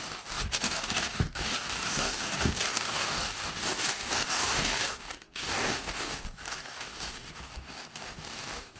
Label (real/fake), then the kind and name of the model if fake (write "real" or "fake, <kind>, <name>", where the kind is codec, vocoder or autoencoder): fake, codec, DAC